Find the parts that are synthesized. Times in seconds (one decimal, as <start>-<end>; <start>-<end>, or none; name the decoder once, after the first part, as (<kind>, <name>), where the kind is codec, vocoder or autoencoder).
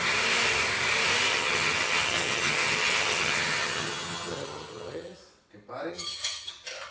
1.3-5.2 (vocoder, HiFi-GAN); 5.9-6.5